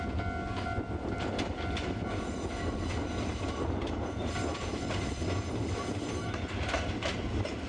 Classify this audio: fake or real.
real